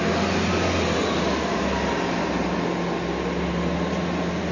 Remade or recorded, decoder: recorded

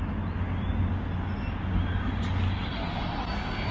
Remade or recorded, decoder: recorded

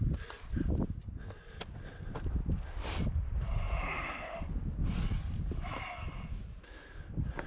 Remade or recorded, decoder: recorded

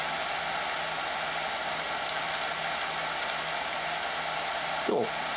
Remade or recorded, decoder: recorded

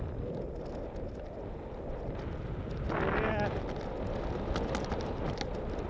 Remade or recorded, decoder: recorded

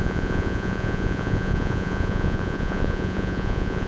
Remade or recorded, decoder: remade, vocoder, Vocos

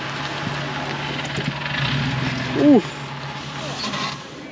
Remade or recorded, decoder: recorded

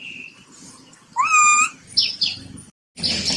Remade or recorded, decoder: recorded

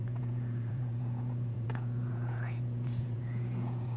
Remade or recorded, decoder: remade, vocoder, Vocos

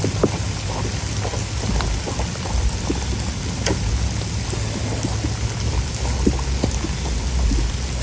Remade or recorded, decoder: recorded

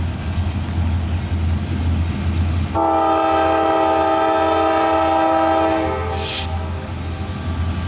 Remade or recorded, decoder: recorded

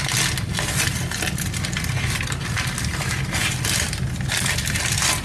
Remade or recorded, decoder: recorded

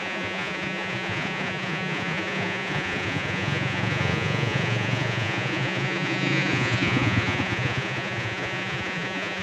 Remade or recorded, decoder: remade, vocoder, Vocos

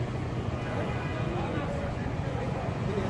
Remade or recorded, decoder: remade, vocoder, Vocos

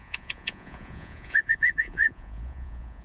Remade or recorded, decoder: remade, vocoder, Vocos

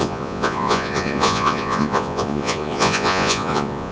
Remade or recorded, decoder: remade, vocoder, Vocos